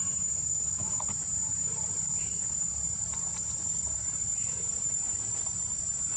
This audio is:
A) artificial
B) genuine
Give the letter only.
A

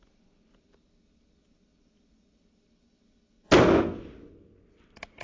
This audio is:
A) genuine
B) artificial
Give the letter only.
A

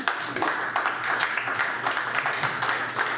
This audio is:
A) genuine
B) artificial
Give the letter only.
A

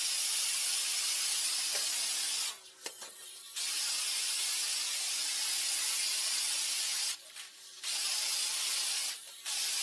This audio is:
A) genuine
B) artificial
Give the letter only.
A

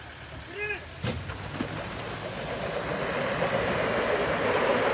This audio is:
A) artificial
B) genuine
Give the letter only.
B